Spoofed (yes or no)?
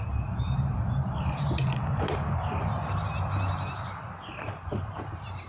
yes